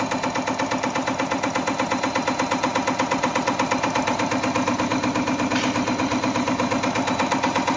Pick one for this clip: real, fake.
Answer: fake